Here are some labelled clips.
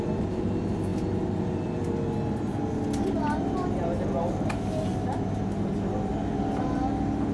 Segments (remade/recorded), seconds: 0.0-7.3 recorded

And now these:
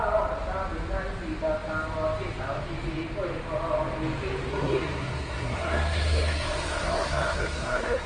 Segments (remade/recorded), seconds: 0.0-4.5 recorded; 4.5-8.1 remade

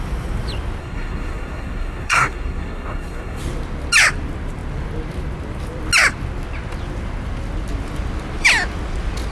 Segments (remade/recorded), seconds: 0.0-0.8 recorded; 0.8-3.4 remade; 3.4-9.3 recorded

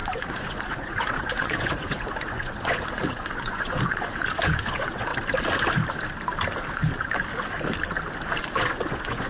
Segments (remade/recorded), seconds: 0.0-5.1 remade; 5.1-8.4 recorded; 8.4-9.3 remade